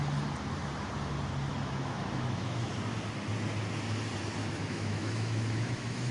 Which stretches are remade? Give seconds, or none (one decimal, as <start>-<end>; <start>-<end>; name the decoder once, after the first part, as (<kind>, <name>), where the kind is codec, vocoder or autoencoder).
1.5-2.7 (autoencoder, DAC-VAE); 4.4-6.1